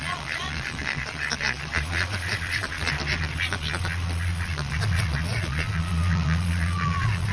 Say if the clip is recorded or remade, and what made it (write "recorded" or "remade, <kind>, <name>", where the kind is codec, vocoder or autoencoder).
remade, vocoder, Vocos